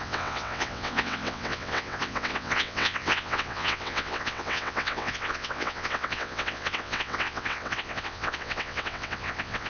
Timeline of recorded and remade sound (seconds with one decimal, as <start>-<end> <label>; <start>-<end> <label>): 0.0-9.7 remade